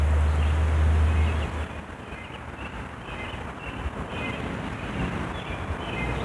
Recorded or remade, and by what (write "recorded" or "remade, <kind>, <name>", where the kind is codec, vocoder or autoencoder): recorded